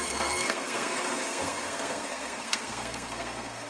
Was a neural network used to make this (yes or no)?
yes